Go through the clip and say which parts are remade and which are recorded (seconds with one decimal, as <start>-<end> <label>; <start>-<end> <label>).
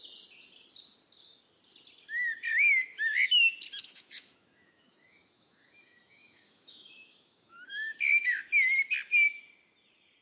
0.0-2.5 recorded; 2.5-3.4 remade; 3.4-3.8 recorded; 3.8-8.5 remade; 8.5-10.2 recorded